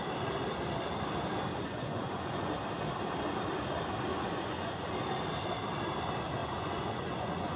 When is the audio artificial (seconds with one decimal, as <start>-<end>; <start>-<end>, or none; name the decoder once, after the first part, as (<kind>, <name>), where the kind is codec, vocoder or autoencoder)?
1.5-2.5 (vocoder, Vocos); 4.1-4.9; 6.4-7.6